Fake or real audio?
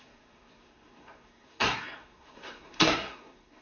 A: fake